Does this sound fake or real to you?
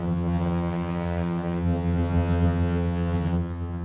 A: fake